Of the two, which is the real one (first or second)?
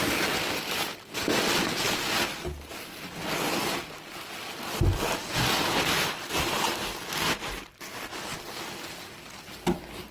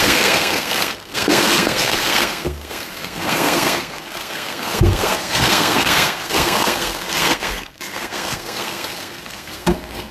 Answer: first